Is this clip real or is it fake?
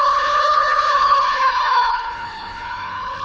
fake